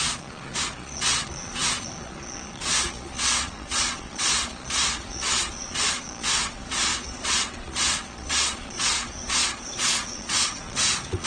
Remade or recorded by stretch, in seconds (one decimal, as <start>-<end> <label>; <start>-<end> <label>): 0.0-11.3 remade